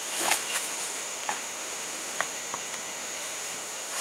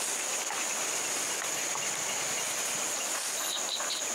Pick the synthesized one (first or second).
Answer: first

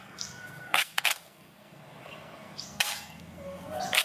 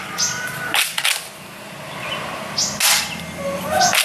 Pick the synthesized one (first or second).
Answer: first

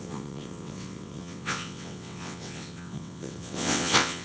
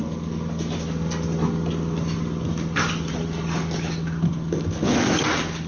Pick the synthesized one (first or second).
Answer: first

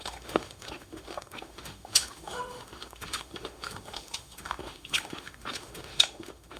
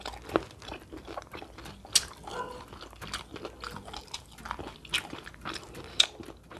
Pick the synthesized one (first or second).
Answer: first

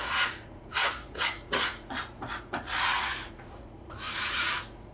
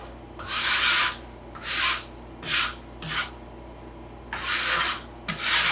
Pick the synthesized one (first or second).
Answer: first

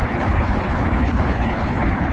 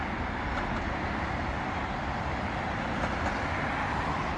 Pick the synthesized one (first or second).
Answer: first